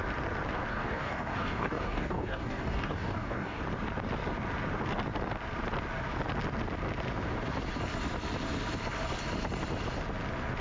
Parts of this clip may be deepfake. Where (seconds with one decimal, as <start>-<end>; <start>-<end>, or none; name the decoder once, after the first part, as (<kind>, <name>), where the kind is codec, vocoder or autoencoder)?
0.7-3.6 (codec, DAC)

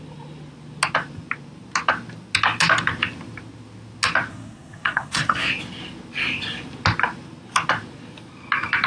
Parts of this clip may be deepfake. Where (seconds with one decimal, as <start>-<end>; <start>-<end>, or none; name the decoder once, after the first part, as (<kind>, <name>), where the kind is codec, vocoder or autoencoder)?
4.3-5.5 (codec, SNAC)

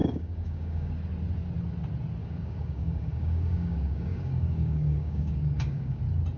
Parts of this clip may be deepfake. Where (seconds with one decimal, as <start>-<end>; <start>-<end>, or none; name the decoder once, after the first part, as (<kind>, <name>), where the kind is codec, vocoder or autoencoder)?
0.0-0.9 (codec, DAC); 2.2-6.0